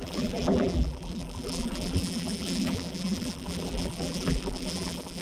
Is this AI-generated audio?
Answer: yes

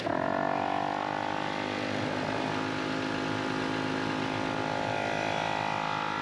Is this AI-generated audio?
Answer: no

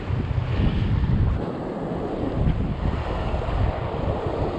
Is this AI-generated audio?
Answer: no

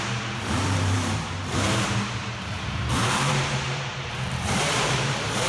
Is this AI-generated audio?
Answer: yes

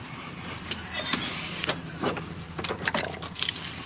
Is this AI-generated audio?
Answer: yes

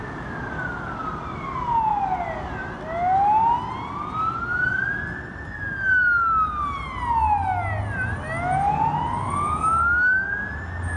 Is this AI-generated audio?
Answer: no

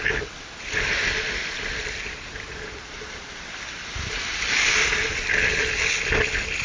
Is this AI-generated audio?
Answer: no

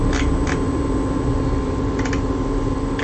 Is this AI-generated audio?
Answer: no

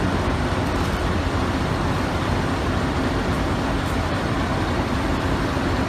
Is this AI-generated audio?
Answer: yes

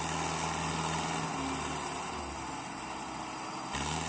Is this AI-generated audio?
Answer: no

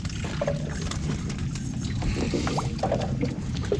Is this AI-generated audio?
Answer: no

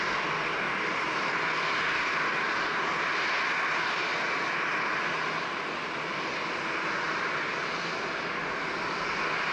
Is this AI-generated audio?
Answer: no